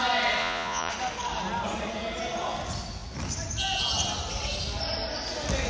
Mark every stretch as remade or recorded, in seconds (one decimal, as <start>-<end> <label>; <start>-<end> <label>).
0.0-0.4 recorded; 0.4-0.9 remade; 0.9-5.7 recorded